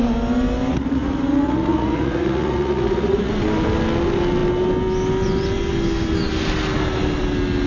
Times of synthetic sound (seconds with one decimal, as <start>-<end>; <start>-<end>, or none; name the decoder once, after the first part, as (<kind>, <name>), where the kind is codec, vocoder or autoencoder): 0.7-3.3 (vocoder, Vocos)